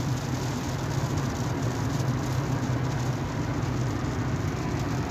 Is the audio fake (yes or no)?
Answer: yes